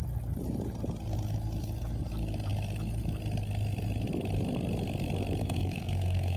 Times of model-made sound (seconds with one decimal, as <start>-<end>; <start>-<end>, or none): 5.4-6.4